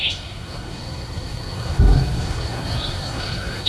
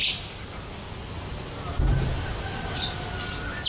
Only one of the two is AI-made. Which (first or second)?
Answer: first